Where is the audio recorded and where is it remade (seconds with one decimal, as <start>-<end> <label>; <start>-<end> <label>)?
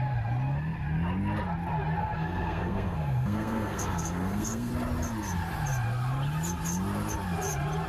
0.0-2.0 recorded; 2.0-4.7 remade; 4.7-7.9 recorded